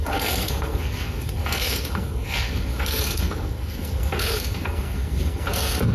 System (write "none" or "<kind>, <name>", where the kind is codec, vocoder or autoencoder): codec, SNAC